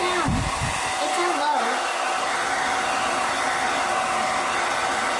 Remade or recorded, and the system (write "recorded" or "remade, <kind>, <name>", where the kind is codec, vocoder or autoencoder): recorded